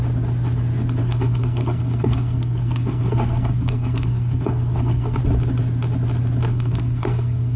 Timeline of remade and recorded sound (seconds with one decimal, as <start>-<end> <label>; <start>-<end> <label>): 0.0-1.0 recorded; 1.0-5.2 remade; 5.2-6.5 recorded; 6.5-7.6 remade